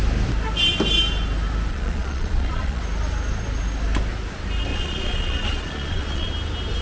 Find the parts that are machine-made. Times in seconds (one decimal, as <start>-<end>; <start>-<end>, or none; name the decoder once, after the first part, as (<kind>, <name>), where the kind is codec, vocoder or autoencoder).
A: 1.7-2.8 (vocoder, Vocos); 4.7-6.3